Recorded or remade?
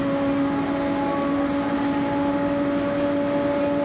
recorded